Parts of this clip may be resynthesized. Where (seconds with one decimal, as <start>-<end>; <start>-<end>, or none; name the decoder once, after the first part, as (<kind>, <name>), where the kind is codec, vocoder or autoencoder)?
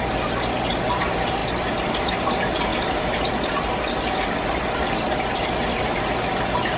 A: none